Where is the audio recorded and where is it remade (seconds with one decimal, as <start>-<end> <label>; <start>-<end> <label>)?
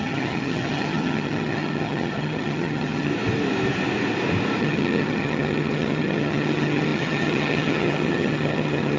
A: 0.0-3.1 remade; 3.1-4.6 recorded; 4.6-9.0 remade